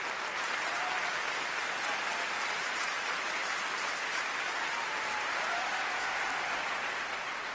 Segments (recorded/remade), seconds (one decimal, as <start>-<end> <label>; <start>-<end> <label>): 0.0-7.5 recorded